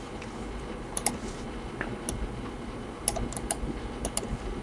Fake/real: real